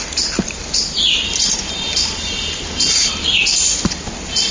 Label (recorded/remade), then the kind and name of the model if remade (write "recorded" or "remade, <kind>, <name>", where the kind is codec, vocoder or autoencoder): recorded